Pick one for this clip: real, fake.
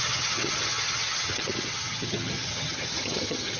fake